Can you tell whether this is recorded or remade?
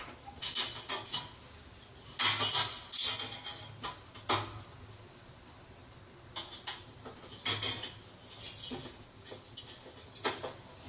recorded